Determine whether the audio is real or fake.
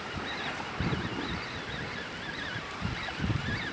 real